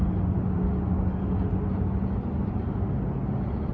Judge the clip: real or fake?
real